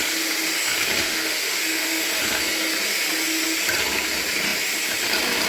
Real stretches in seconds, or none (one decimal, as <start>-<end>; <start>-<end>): 0.0-1.0; 2.0-5.5